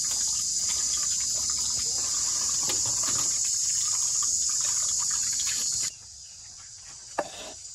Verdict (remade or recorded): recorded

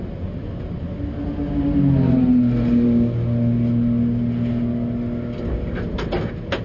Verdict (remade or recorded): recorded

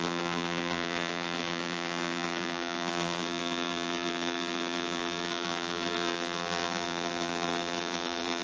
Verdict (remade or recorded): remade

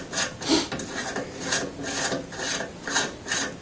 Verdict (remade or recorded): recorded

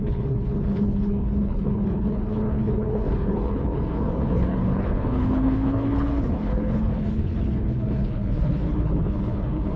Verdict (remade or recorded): remade